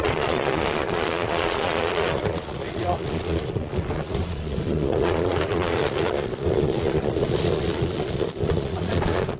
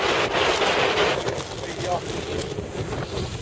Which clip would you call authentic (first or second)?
second